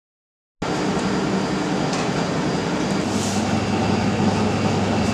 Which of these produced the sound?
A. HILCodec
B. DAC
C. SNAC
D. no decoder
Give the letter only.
D